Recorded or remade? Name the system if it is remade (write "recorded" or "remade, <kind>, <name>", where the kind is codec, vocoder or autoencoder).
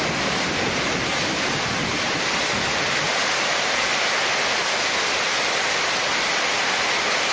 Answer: recorded